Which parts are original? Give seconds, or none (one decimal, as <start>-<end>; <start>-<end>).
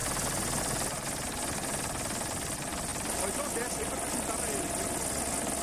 0.6-5.6